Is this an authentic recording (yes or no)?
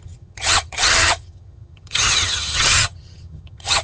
no